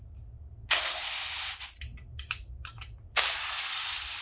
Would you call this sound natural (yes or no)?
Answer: yes